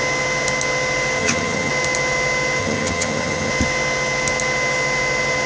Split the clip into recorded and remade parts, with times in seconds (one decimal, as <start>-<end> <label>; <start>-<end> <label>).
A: 0.0-1.2 recorded; 1.2-1.7 remade; 1.7-2.6 recorded; 2.6-3.5 remade; 3.5-5.5 recorded